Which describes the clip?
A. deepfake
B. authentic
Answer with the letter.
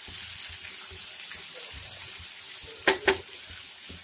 B